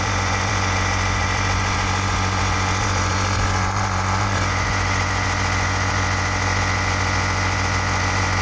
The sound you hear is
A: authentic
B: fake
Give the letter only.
B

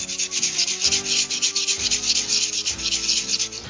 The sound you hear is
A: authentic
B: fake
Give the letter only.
A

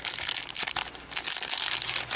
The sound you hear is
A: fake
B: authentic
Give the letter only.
B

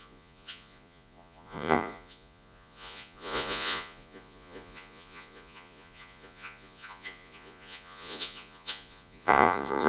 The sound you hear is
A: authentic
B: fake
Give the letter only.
B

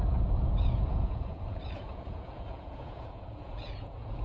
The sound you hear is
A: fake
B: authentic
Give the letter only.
A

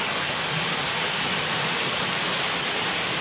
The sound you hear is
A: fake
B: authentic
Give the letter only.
B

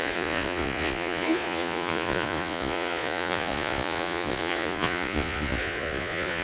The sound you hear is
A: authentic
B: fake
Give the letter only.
B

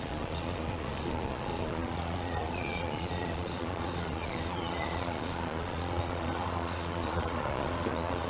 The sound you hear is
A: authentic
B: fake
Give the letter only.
B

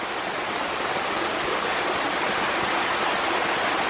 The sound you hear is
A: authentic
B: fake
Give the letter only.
A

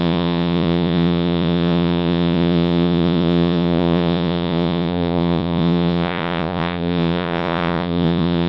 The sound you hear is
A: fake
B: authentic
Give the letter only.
A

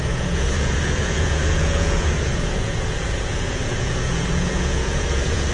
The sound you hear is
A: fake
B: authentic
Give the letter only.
A